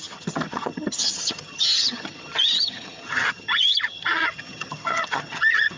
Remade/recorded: remade